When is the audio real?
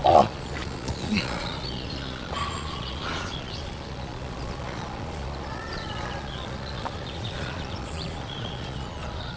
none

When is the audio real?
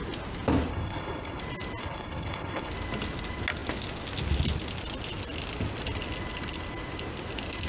0.0-0.7; 1.4-1.8; 2.7-7.7